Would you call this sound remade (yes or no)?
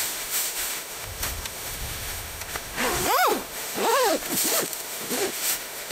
yes